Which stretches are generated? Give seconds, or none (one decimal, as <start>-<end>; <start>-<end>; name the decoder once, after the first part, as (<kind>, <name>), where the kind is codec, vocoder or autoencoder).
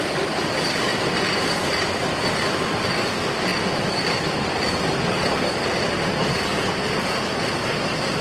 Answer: 6.5-7.2 (vocoder, Vocos)